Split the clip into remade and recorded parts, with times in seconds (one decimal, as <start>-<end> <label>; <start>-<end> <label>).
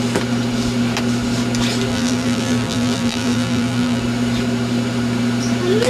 0.0-1.9 recorded; 1.9-4.0 remade; 4.0-5.9 recorded